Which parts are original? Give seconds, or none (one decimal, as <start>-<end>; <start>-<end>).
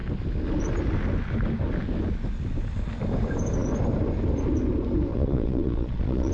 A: 0.0-5.1